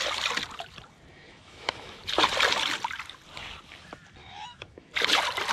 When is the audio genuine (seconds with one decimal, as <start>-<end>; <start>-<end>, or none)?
0.0-1.1; 2.0-4.2; 4.9-5.5